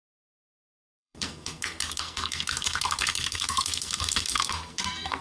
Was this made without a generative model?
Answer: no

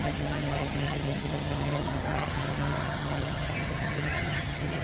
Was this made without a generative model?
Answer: no